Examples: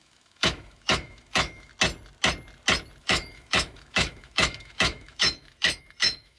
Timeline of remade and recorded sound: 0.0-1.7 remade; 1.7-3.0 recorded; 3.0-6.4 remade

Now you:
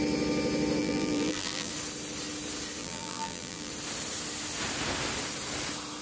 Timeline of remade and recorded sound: 0.0-0.8 recorded; 0.8-1.7 remade; 1.7-2.8 recorded; 2.8-3.7 remade; 3.7-6.0 recorded

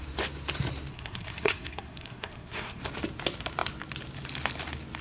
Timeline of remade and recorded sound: 0.0-0.9 recorded; 0.9-2.8 remade; 2.8-5.0 recorded

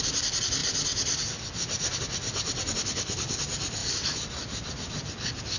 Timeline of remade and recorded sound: 0.0-2.8 recorded; 2.8-3.4 remade; 3.4-5.6 recorded

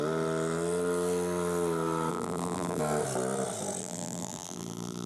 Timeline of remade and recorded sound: 0.0-2.1 recorded; 2.1-2.8 remade; 2.8-3.8 recorded; 3.8-5.1 remade

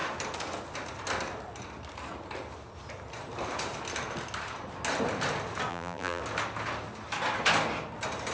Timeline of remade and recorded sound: 0.0-5.7 recorded; 5.7-6.2 remade; 6.2-8.3 recorded

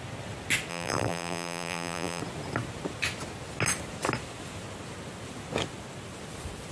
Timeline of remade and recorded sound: 0.0-0.7 recorded; 0.7-2.2 remade; 2.2-6.7 recorded

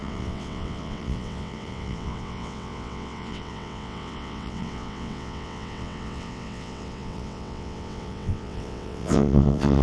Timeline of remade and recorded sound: 0.0-9.8 remade